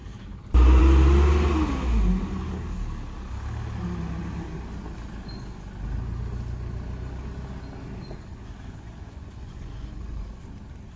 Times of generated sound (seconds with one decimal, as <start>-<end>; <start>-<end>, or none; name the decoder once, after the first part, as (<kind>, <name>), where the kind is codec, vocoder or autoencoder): 8.3-10.4 (vocoder, Vocos)